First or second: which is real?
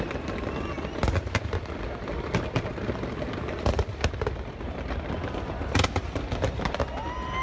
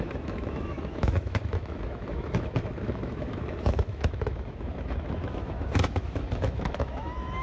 first